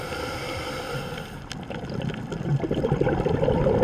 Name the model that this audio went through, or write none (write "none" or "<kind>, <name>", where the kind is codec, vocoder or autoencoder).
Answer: none